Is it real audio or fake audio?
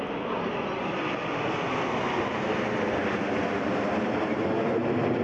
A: real